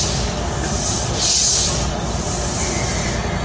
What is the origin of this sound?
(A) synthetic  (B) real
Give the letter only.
B